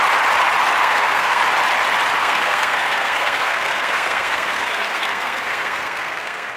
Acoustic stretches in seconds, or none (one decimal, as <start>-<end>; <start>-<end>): 0.0-0.8; 1.4-2.2